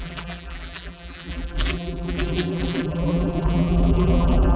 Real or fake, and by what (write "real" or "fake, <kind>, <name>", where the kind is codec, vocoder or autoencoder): fake, vocoder, BigVGAN v2